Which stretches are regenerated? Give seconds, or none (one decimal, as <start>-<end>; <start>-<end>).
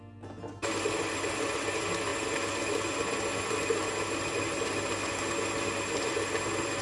none